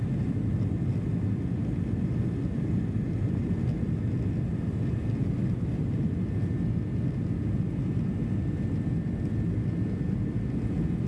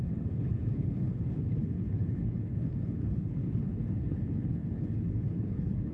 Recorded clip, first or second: first